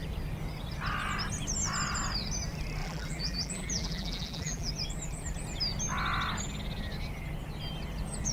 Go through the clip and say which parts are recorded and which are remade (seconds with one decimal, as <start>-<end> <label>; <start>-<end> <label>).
0.0-2.8 recorded; 2.8-4.7 remade; 4.7-8.3 recorded